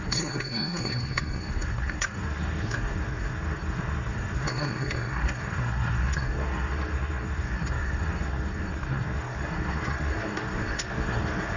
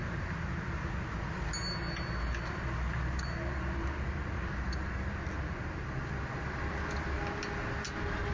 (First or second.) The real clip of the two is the second